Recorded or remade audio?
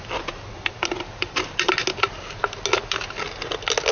recorded